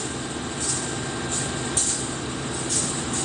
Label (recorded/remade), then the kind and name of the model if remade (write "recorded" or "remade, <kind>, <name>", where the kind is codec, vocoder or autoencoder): recorded